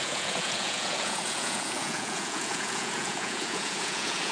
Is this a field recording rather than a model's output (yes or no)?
no